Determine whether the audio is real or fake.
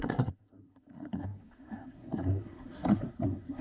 fake